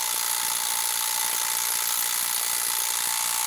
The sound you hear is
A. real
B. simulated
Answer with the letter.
A